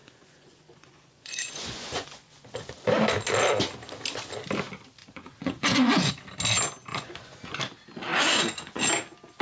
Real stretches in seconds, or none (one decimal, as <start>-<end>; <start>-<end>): 2.7-5.0; 6.1-6.9; 7.6-8.1; 8.8-9.4